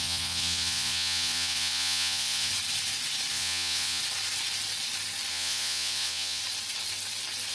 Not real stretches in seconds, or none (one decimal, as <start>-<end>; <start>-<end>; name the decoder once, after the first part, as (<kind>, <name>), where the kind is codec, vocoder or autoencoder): 0.0-2.5 (vocoder, Vocos); 3.3-4.0; 5.3-6.4